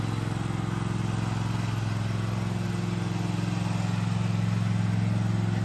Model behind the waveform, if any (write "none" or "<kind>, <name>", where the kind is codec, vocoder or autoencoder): none